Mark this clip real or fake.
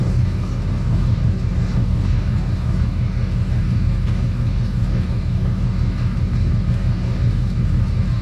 fake